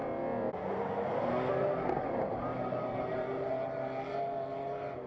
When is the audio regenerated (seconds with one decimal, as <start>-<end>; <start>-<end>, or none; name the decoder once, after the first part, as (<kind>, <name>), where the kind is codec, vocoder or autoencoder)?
2.5-3.5 (vocoder, BigVGAN v2)

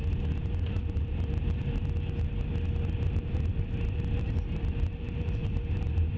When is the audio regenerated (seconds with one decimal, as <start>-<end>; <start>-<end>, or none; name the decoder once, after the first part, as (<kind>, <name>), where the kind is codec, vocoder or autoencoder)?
0.0-1.8 (vocoder, BigVGAN v2); 2.8-6.2

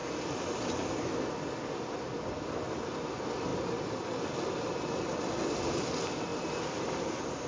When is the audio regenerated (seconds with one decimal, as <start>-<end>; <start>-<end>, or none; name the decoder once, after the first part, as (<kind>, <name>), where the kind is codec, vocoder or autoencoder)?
none

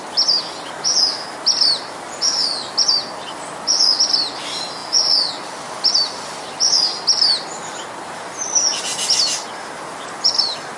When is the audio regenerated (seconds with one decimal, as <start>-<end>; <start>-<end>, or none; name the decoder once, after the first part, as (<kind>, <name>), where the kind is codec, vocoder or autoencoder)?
none

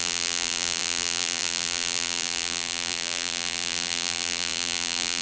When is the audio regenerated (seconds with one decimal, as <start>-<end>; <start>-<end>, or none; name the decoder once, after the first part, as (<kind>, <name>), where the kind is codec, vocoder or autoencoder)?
0.0-5.2 (vocoder, BigVGAN v2)

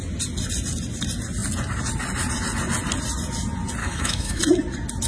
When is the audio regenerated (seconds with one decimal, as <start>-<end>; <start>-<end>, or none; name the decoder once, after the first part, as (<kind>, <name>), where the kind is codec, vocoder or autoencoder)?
3.8-4.4 (autoencoder, DAC-VAE)

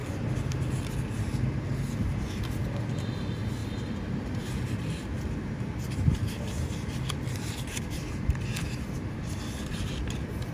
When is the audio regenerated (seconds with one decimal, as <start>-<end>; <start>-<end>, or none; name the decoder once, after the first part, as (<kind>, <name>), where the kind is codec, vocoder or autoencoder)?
0.0-0.7 (vocoder, BigVGAN v2); 3.6-8.1

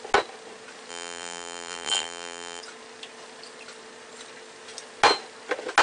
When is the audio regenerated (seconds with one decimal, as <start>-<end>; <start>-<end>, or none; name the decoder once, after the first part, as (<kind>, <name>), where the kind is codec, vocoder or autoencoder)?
0.9-2.6 (vocoder, BigVGAN v2)